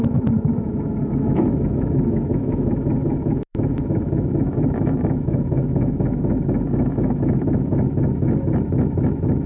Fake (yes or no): yes